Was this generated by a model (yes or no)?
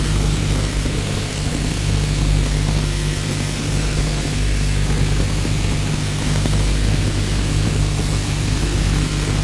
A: yes